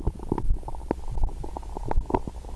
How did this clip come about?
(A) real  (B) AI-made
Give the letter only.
A